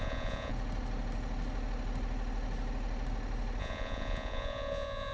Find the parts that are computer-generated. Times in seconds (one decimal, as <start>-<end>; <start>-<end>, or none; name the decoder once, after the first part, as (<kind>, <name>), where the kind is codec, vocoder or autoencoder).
0.0-0.5 (vocoder, Vocos); 3.6-5.1